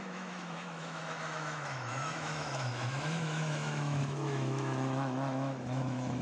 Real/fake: fake